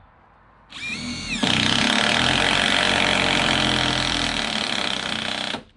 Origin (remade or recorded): recorded